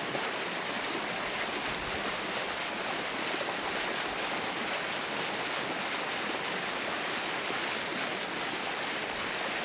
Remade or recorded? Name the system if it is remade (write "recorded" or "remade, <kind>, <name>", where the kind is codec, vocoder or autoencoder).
recorded